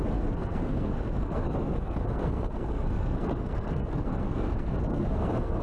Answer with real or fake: fake